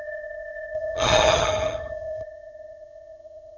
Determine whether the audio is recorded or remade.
remade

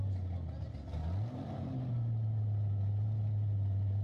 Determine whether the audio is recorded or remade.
recorded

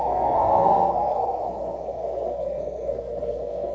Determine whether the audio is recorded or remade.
remade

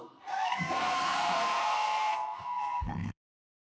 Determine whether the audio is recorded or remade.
remade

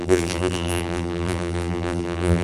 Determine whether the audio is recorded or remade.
remade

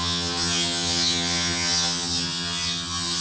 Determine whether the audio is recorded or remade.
remade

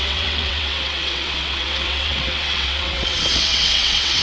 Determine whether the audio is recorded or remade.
remade